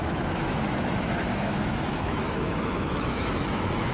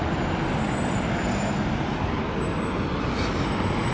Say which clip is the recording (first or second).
second